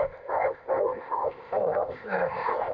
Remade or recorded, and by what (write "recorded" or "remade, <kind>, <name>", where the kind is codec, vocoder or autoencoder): remade, codec, ZipCodec